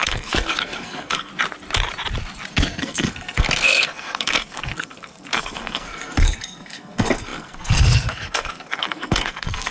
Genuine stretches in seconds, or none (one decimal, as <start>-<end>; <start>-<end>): 1.3-2.5